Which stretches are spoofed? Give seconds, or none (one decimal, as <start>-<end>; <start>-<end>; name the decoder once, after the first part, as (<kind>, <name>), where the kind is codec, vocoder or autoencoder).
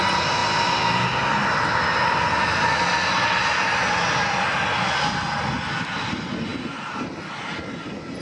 none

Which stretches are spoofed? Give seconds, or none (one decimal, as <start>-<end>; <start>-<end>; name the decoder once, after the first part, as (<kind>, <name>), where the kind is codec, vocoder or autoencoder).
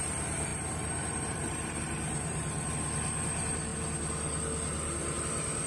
0.5-2.7 (vocoder, BigVGAN v2)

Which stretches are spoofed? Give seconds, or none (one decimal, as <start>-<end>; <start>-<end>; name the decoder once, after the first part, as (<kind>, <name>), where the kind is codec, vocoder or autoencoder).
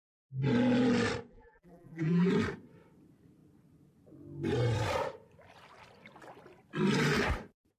1.3-2.3 (vocoder, BigVGAN v2)